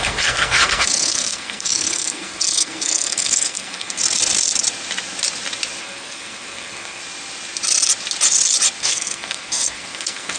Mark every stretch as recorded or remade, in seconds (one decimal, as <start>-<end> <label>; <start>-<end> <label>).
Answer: 0.0-4.0 remade; 4.0-5.8 recorded; 5.8-7.0 remade; 7.0-8.8 recorded; 8.8-10.4 remade